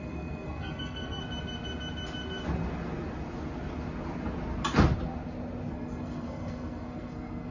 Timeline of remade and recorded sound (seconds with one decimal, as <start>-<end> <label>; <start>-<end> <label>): 0.0-1.2 remade; 1.2-5.7 recorded; 5.7-7.5 remade